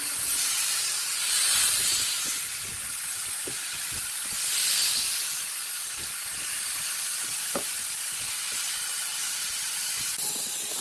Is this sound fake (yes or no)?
no